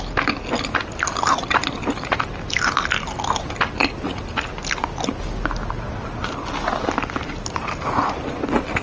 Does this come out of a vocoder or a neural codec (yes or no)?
no